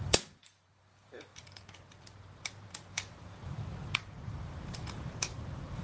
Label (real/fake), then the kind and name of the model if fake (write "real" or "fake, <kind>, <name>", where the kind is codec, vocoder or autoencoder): fake, vocoder, BigVGAN v2